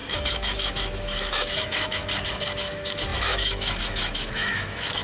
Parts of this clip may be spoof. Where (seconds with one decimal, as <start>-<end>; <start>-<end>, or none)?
0.0-2.0; 2.6-5.0